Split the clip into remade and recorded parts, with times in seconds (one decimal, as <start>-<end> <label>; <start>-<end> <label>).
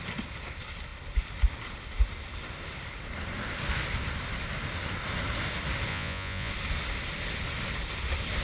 0.0-5.9 recorded; 5.9-6.5 remade; 6.5-8.4 recorded